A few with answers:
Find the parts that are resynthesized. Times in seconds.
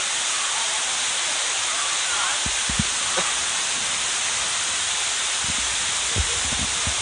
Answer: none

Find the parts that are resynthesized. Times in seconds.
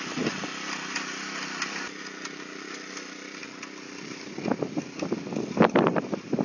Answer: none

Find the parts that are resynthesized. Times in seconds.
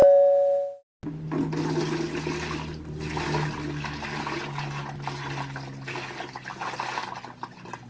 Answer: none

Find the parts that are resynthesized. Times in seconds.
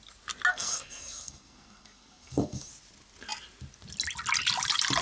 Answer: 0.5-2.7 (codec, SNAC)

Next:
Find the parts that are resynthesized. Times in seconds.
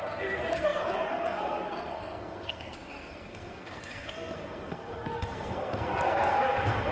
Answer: 0.0-6.9 (codec, SNAC)